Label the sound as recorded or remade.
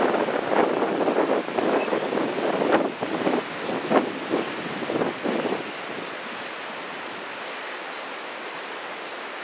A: remade